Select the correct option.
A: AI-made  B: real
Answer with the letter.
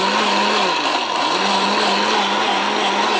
B